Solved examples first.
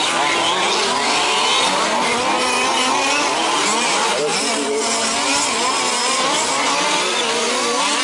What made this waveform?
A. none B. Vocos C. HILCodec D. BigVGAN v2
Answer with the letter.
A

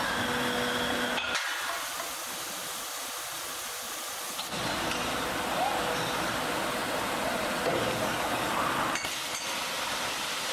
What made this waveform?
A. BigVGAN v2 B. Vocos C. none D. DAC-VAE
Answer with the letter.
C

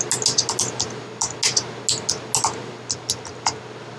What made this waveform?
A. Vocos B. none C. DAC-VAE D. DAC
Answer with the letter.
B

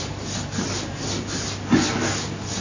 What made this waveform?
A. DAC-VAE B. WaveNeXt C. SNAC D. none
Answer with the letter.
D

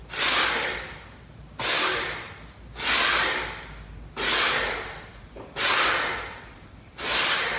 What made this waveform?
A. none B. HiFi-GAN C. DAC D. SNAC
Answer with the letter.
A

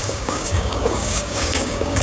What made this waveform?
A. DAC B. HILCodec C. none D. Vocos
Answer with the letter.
A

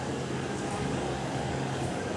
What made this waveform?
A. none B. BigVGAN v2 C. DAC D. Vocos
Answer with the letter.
C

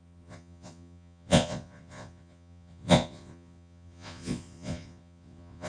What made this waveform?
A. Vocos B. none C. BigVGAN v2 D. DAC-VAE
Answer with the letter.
A